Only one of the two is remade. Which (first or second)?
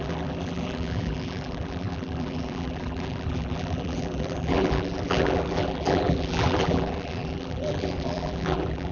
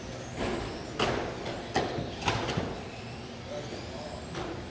first